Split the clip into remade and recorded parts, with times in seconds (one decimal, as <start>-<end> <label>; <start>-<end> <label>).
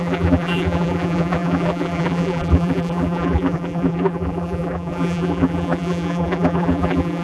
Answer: 0.0-7.2 remade